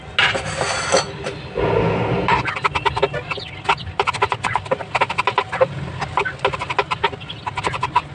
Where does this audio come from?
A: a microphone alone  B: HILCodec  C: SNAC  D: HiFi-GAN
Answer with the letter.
A